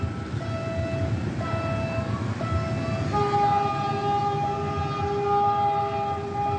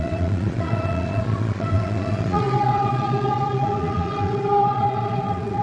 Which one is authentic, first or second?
first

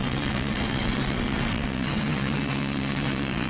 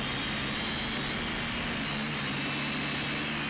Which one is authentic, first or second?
second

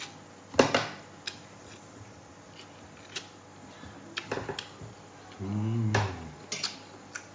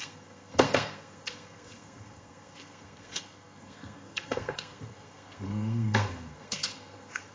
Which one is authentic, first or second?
first